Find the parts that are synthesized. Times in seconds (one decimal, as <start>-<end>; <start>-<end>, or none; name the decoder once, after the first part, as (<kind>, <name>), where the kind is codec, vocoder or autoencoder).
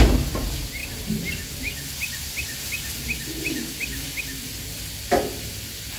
none